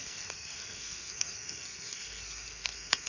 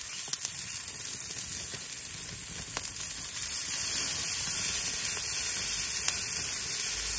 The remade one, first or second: first